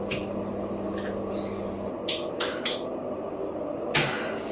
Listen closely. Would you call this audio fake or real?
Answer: real